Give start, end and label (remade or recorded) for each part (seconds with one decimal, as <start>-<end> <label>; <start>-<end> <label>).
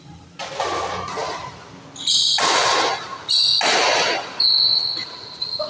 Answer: 0.0-5.0 recorded; 5.0-5.7 remade